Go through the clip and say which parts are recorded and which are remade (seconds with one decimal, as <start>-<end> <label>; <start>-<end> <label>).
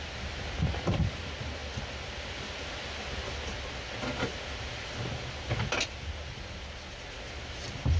0.0-8.0 recorded